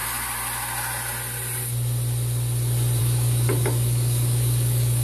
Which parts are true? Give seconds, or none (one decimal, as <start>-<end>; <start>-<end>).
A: 0.0-3.0